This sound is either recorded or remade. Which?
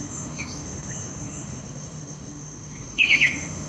remade